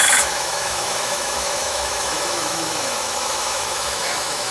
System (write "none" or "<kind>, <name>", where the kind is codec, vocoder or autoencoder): autoencoder, DAC-VAE